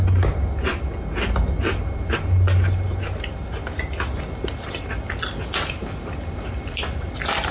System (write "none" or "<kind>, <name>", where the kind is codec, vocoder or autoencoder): none